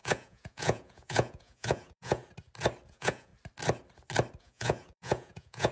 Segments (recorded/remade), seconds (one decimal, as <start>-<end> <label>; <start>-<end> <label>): 0.0-2.2 remade; 2.2-2.9 recorded; 2.9-3.3 remade; 3.3-4.4 recorded; 4.4-5.7 remade